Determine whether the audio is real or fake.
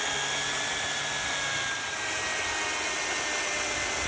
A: real